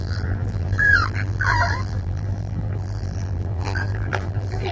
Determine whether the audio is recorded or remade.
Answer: remade